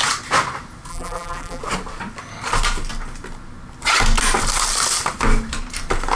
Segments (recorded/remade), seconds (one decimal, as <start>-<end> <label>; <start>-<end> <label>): 0.0-0.9 recorded; 0.9-1.6 remade; 1.6-6.2 recorded